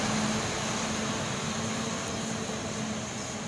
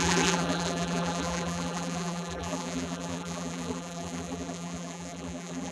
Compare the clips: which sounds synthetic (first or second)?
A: second